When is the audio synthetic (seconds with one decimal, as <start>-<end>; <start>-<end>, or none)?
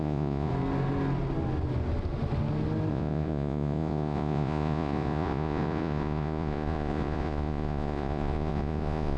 0.0-0.5; 2.9-9.2